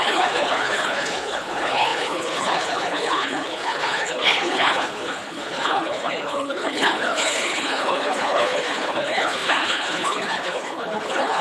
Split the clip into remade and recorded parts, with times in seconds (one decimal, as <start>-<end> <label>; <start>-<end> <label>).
0.0-11.4 remade